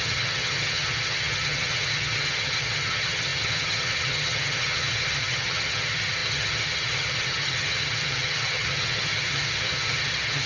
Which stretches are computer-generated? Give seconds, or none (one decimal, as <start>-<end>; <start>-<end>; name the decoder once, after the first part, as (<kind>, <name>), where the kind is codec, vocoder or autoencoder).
0.0-10.5 (vocoder, HiFi-GAN)